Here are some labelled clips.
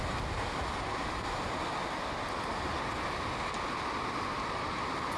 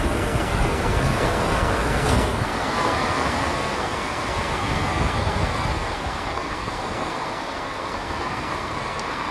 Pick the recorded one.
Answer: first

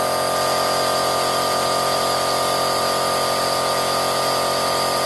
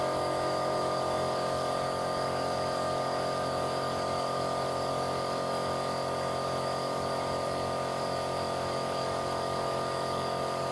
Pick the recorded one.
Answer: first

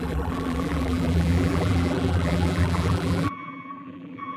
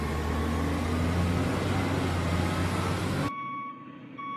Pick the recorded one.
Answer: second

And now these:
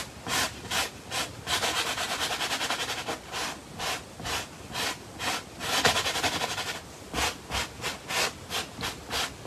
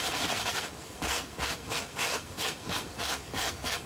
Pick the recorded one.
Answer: first